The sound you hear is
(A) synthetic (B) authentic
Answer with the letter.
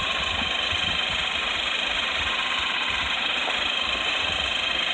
A